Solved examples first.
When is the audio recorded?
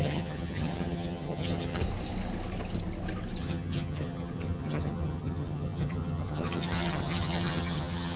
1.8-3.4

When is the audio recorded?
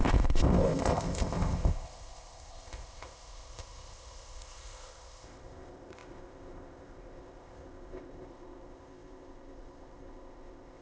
none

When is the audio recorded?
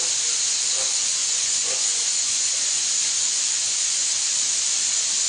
0.0-1.2; 4.1-5.3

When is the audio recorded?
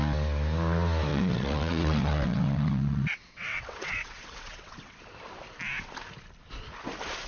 0.0-1.1; 5.0-7.3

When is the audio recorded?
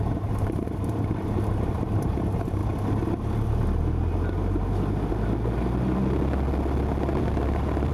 2.6-7.2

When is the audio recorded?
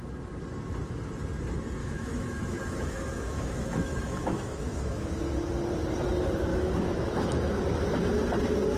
0.0-1.8; 5.1-6.5; 7.5-8.8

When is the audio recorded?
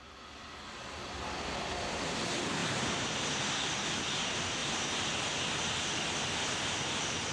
0.0-2.6; 3.4-4.6; 5.1-7.3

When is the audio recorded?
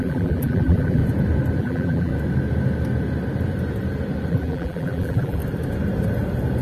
1.0-1.6; 2.1-4.3; 5.4-6.6